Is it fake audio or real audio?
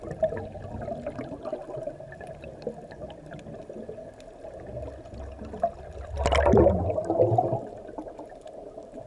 real